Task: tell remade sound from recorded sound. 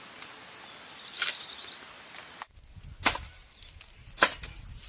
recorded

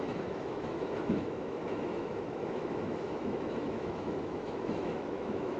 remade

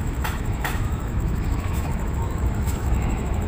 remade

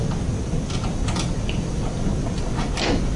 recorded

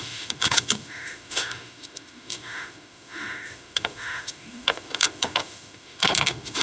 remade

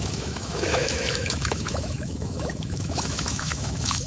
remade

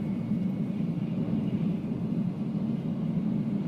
recorded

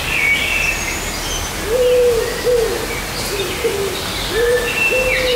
recorded